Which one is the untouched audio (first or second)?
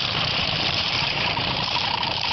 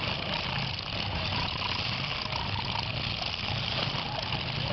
second